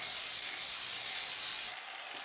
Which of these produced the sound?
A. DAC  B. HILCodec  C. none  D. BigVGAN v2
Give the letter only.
C